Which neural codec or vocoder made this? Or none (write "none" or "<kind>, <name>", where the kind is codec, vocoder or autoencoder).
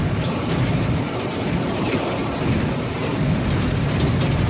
none